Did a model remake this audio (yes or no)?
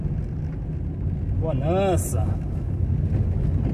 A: no